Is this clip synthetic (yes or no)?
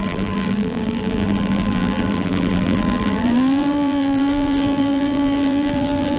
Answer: yes